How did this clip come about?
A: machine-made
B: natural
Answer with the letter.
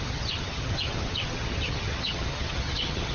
A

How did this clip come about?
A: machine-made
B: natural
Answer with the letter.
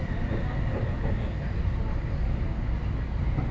B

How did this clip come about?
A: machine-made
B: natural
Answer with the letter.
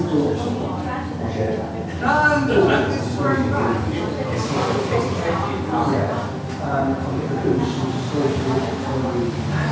B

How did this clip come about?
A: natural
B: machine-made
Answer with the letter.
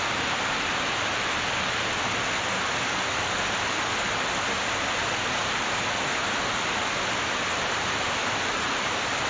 A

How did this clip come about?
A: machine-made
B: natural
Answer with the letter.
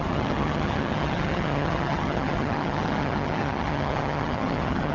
A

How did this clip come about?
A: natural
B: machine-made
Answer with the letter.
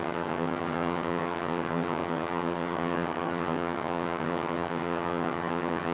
B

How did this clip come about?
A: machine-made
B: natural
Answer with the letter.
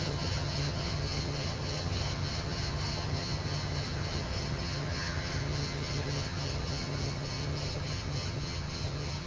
A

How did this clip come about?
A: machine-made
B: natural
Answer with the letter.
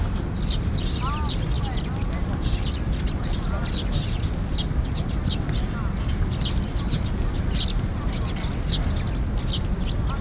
B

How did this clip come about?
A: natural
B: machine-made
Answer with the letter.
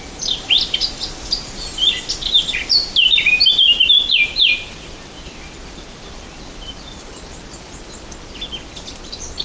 A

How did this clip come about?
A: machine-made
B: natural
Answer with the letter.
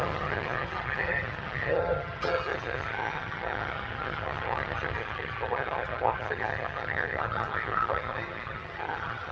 A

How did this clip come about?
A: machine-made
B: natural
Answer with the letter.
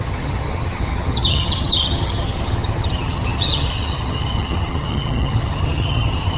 A